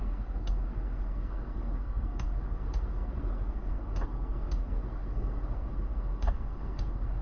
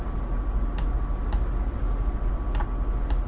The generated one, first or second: first